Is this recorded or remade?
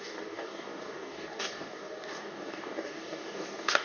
remade